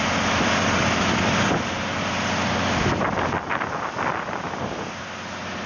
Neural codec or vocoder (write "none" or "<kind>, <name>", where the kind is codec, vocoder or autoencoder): none